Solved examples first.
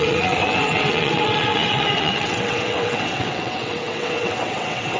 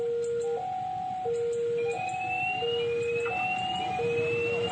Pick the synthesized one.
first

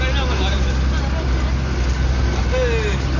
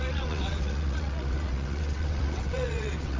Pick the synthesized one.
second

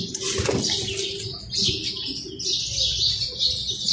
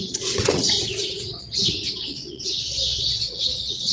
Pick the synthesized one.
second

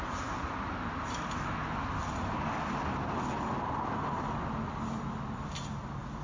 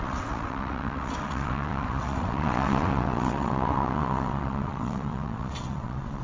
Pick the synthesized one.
second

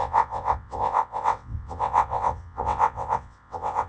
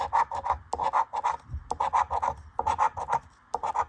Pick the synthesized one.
first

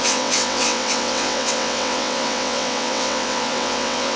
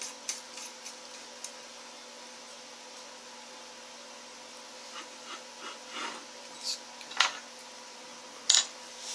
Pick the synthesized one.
first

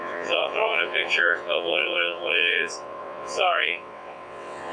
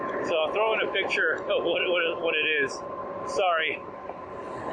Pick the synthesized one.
first